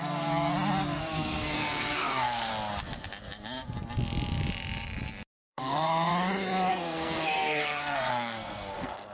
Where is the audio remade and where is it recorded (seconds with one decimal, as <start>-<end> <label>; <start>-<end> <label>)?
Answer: 0.0-0.5 remade; 0.5-1.0 recorded; 1.0-2.5 remade; 2.5-5.5 recorded; 5.5-6.1 remade; 6.1-6.7 recorded; 6.7-9.1 remade